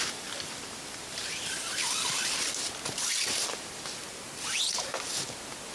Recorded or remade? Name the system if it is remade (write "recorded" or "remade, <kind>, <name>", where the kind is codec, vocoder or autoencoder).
recorded